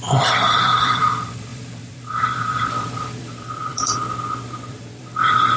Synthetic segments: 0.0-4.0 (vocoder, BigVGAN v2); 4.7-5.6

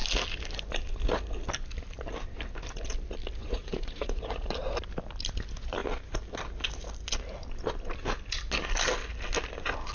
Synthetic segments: 3.4-4.5 (vocoder, Vocos)

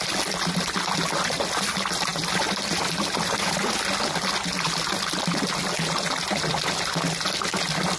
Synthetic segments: none

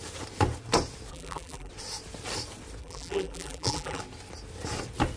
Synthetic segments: 1.1-1.7 (vocoder, BigVGAN v2); 2.8-4.0